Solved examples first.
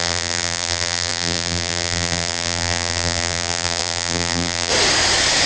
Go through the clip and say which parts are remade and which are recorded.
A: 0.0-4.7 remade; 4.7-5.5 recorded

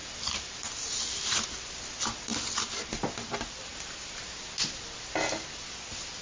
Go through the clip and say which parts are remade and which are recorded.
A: 0.0-6.2 recorded

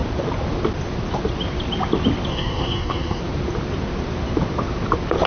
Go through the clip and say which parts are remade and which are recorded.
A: 0.0-2.3 recorded; 2.3-3.2 remade; 3.2-5.3 recorded